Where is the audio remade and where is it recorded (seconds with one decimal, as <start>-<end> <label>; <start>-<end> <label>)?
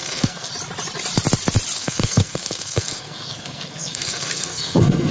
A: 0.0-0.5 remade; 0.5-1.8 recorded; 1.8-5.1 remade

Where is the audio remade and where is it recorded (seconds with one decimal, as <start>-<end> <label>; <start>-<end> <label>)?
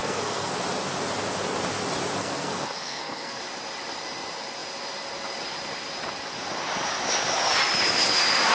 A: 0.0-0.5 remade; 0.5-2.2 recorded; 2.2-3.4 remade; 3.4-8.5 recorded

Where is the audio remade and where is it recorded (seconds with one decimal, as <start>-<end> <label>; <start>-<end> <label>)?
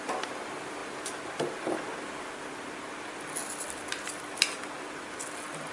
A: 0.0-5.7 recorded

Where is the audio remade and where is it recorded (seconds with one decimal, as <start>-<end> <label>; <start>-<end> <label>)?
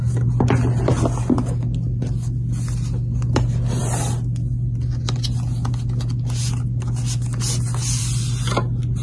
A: 0.0-9.0 recorded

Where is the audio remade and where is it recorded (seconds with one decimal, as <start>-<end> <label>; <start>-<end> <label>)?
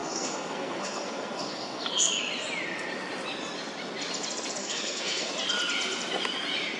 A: 0.0-2.2 remade; 2.2-4.6 recorded; 4.6-5.3 remade; 5.3-6.8 recorded